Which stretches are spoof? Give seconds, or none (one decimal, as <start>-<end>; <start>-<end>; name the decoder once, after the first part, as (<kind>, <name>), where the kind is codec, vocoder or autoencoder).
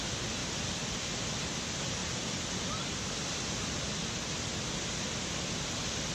2.0-2.6 (vocoder, BigVGAN v2)